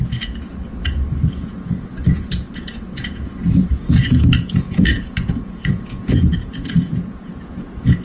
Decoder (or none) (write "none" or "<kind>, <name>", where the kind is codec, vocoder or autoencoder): vocoder, Vocos